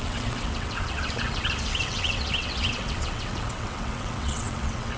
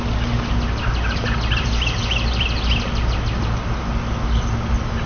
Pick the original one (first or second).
second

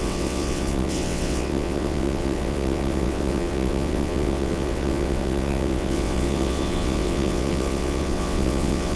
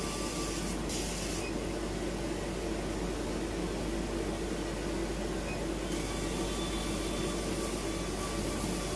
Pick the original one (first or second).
second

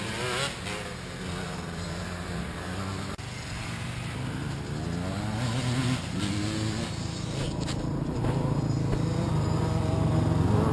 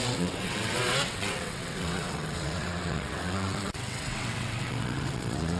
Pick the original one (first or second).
first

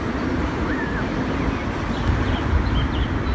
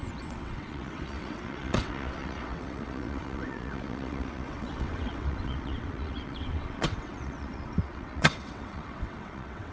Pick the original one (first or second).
first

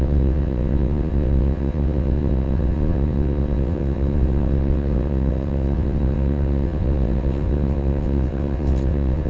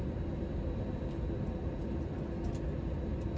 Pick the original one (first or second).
second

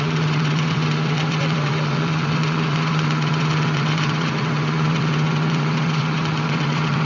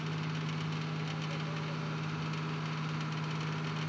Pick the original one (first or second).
second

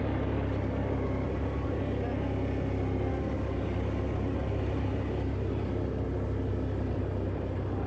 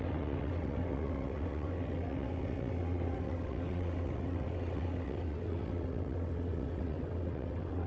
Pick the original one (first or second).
first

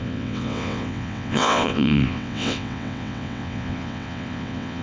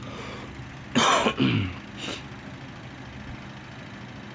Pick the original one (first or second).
second